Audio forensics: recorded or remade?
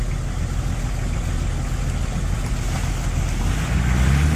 recorded